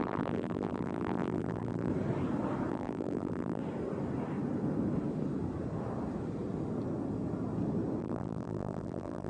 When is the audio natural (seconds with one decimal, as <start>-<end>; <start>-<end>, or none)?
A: 1.9-2.7; 3.6-8.0